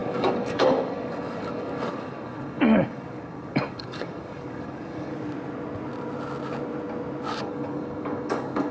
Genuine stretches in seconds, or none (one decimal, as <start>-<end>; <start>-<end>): 5.1-7.4